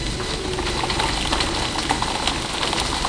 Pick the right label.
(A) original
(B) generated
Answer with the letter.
A